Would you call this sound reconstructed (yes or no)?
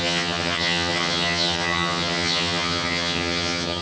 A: yes